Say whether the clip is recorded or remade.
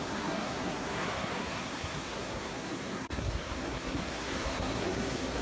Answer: remade